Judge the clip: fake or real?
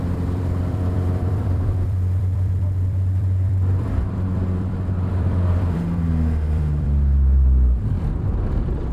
fake